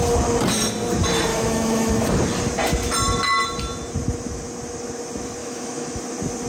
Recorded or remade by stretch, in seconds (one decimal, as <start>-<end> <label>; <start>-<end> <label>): 0.0-1.3 recorded; 1.3-1.9 remade; 1.9-5.4 recorded; 5.4-6.0 remade; 6.0-6.5 recorded